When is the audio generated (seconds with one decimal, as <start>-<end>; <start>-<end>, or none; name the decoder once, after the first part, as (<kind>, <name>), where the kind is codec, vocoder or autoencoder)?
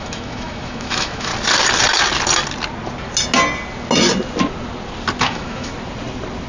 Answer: 0.0-1.3 (autoencoder, DAC-VAE); 5.2-5.7